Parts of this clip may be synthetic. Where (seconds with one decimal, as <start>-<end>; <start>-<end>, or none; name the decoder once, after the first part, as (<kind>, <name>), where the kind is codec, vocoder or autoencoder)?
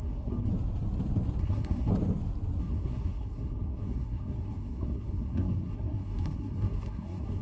0.0-0.5 (codec, SNAC); 1.4-1.9; 2.6-7.4